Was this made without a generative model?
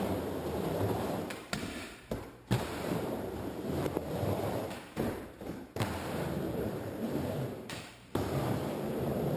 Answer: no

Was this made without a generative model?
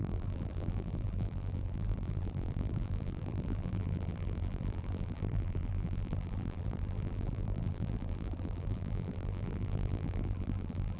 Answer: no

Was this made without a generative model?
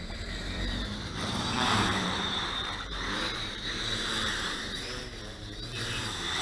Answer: no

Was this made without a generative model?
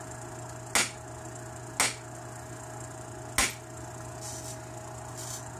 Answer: yes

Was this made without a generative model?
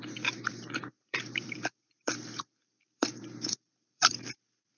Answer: no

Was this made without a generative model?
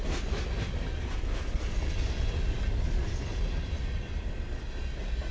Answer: yes